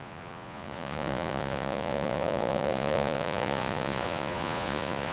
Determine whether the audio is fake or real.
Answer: fake